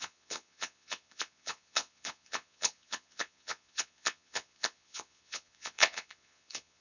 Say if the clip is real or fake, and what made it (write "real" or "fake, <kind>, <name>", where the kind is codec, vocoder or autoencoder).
fake, vocoder, Vocos